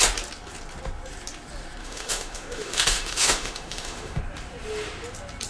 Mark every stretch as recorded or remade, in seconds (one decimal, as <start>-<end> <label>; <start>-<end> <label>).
0.0-1.8 recorded; 1.8-4.2 remade; 4.2-5.5 recorded

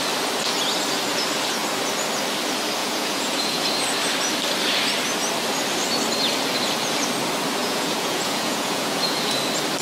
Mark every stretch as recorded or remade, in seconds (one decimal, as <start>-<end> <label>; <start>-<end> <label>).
0.0-2.8 recorded; 2.8-3.6 remade; 3.6-7.6 recorded; 7.6-9.4 remade; 9.4-9.8 recorded

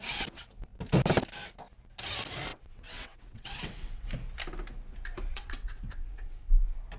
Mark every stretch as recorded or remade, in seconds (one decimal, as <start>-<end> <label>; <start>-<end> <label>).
0.0-2.5 recorded; 2.5-4.1 remade; 4.1-5.3 recorded; 5.3-6.5 remade; 6.5-7.0 recorded

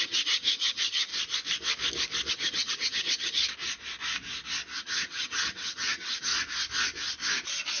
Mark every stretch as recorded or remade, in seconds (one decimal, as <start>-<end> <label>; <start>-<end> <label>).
0.0-1.1 remade; 1.1-2.3 recorded; 2.3-3.4 remade; 3.4-4.8 recorded; 4.8-6.3 remade; 6.3-7.8 recorded

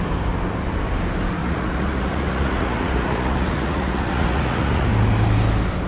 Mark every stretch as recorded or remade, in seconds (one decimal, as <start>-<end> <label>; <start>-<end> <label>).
0.0-1.4 recorded; 1.4-4.9 remade; 4.9-5.9 recorded

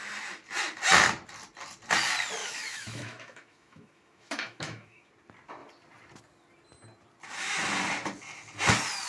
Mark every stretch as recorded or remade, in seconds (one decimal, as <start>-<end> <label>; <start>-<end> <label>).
0.0-2.4 recorded; 2.4-5.1 remade; 5.1-9.1 recorded

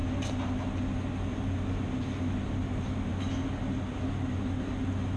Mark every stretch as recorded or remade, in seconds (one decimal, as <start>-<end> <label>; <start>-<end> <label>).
0.0-5.2 recorded